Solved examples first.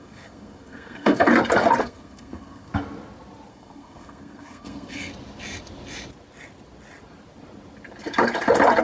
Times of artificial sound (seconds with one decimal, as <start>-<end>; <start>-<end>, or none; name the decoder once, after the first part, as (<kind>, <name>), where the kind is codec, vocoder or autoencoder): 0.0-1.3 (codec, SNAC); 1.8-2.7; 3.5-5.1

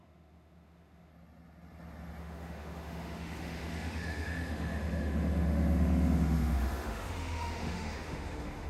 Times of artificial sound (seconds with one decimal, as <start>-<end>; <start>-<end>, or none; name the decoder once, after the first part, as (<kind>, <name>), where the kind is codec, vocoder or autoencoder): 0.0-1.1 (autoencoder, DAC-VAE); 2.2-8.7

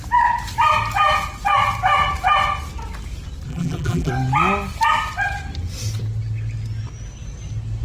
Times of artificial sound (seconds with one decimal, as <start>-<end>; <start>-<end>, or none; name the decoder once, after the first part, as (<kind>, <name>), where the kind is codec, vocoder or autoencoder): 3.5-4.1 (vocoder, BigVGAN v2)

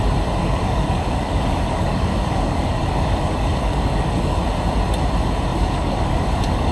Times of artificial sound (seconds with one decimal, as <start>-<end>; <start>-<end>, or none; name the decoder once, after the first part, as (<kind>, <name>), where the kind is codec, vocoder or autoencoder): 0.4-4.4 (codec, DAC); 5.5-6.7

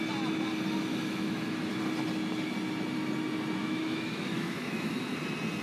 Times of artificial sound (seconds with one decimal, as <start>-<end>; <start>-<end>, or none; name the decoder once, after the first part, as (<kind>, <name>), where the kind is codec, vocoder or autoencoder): 0.9-1.8 (autoencoder, DAC-VAE); 3.6-4.9

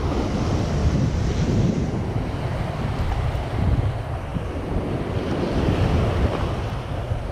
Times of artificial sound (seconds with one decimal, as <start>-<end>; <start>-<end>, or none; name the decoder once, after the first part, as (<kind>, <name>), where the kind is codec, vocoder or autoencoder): 0.8-2.8 (vocoder, BigVGAN v2); 4.3-5.2

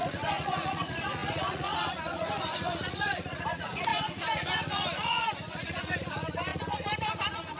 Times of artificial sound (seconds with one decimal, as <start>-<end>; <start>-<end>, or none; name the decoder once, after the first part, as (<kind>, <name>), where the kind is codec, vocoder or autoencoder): 0.0-7.6 (vocoder, Vocos)